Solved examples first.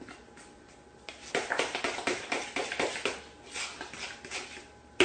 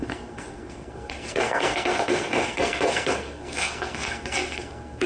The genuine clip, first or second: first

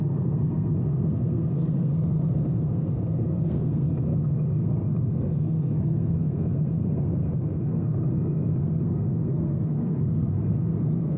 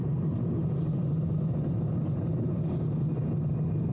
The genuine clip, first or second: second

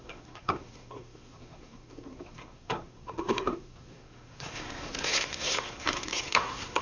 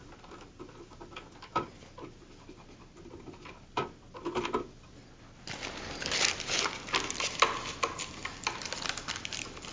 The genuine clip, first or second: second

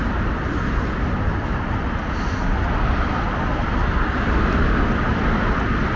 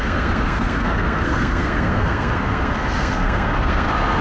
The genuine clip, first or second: first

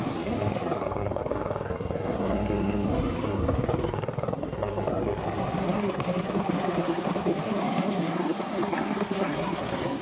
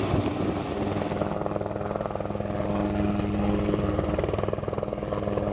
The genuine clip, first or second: second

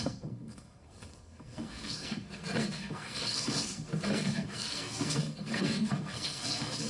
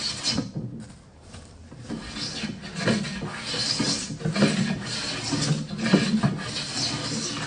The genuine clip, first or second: second